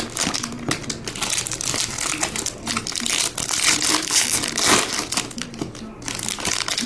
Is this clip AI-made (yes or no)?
no